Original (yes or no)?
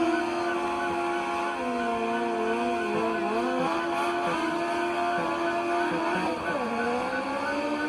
yes